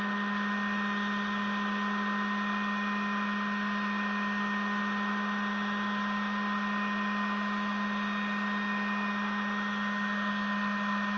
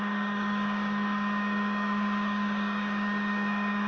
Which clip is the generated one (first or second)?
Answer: second